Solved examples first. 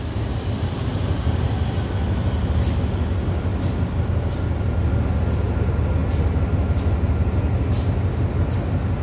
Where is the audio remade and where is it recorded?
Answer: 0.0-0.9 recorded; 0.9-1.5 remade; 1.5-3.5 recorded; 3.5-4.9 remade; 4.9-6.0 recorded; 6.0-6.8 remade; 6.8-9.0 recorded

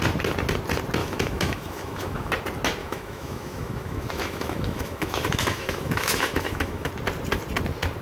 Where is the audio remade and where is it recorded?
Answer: 0.0-1.0 recorded; 1.0-2.3 remade; 2.3-2.8 recorded; 2.8-6.9 remade; 6.9-8.0 recorded

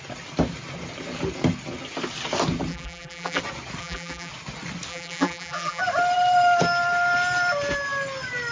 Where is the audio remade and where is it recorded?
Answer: 0.0-2.7 recorded; 2.7-3.4 remade; 3.4-3.8 recorded; 3.8-4.3 remade; 4.3-4.9 recorded; 4.9-5.8 remade; 5.8-8.5 recorded

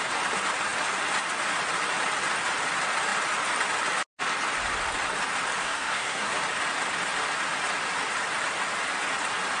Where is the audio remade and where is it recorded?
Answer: 0.0-5.6 recorded; 5.6-6.4 remade; 6.4-9.6 recorded